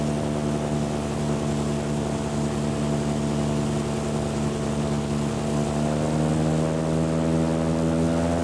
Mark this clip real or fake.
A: real